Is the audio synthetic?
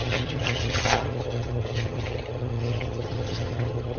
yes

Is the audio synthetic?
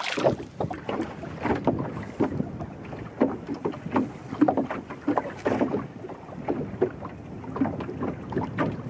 no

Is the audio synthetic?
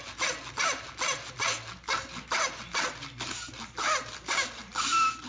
no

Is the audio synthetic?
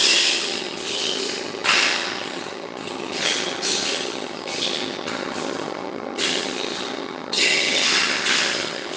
yes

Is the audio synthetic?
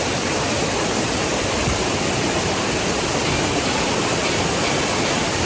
no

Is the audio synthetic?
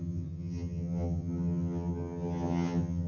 yes